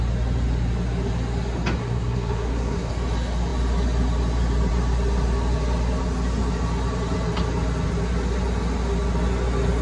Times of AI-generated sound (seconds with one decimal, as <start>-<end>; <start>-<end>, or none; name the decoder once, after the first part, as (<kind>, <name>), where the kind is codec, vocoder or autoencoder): 1.8-2.9 (codec, SNAC)